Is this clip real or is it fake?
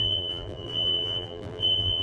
fake